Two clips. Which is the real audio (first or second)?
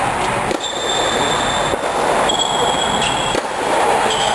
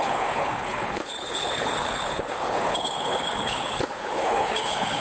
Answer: first